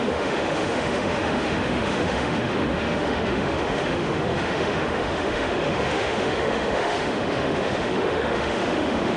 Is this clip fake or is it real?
fake